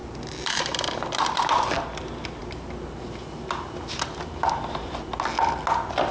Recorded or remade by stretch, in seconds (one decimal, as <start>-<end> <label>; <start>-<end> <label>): 0.0-1.4 remade; 1.4-6.1 recorded